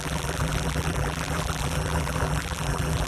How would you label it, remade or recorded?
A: remade